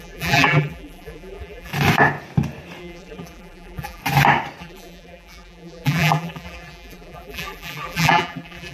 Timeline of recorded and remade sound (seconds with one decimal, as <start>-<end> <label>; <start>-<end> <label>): 0.0-1.7 remade; 1.7-2.8 recorded; 2.8-4.0 remade; 4.0-4.6 recorded; 4.6-8.7 remade